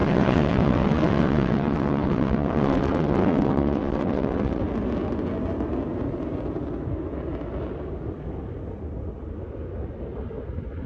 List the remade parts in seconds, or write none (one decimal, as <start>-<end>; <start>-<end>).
0.0-4.6